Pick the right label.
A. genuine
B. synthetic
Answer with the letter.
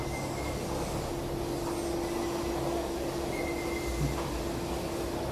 A